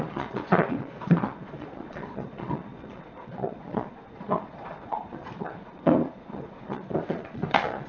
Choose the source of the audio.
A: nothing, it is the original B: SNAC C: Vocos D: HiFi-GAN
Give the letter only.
C